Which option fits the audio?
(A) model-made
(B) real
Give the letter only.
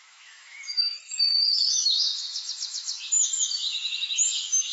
A